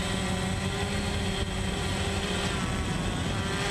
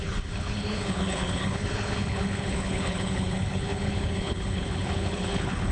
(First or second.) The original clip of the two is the first